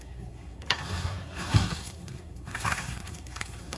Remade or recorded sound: remade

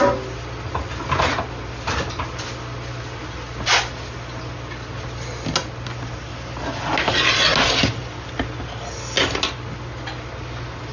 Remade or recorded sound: recorded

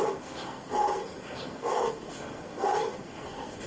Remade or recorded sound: remade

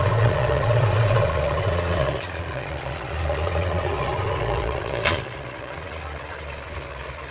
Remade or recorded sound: remade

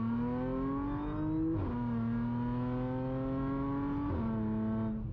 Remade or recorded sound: recorded